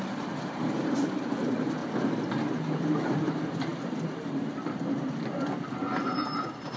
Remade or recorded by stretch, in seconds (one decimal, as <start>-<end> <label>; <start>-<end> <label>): 0.0-1.8 remade; 1.8-2.5 recorded; 2.5-6.8 remade

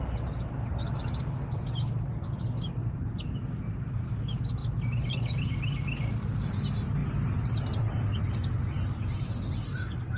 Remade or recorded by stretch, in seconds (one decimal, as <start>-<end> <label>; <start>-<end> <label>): 0.0-2.8 recorded; 2.8-3.3 remade; 3.3-10.2 recorded